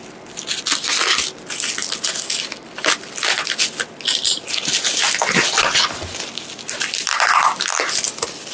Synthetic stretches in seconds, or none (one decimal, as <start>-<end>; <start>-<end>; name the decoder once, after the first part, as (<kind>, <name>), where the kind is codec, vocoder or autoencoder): none